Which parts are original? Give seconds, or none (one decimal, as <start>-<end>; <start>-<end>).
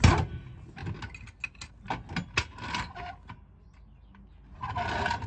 0.0-5.3